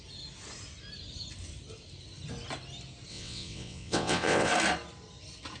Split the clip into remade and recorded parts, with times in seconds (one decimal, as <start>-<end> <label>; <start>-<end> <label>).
0.0-3.1 recorded; 3.1-4.5 remade; 4.5-5.6 recorded